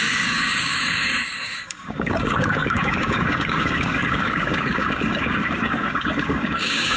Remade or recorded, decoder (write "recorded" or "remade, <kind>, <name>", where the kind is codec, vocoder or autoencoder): remade, codec, DAC